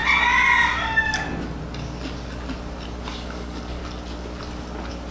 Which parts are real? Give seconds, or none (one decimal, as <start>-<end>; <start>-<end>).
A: 0.0-3.1; 3.8-5.1